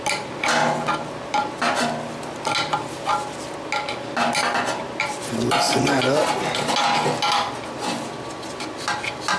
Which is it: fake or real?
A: real